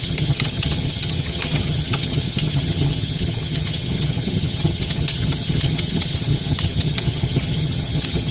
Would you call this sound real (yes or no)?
no